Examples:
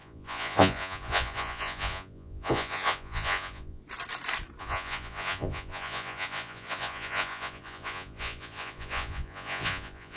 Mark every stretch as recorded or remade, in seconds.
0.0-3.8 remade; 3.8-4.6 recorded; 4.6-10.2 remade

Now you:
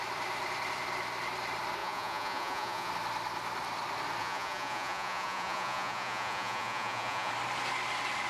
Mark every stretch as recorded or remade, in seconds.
0.0-1.8 recorded; 1.8-2.9 remade; 2.9-4.2 recorded; 4.2-7.3 remade; 7.3-8.3 recorded